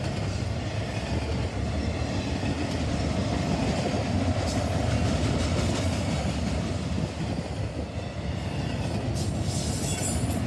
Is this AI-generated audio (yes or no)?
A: no